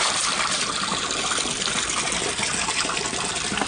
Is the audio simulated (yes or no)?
no